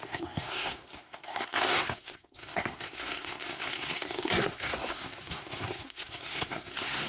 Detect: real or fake fake